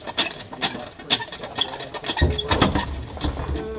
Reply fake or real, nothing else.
real